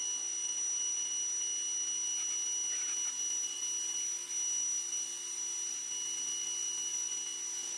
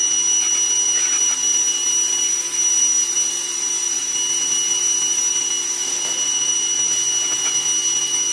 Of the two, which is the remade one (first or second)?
second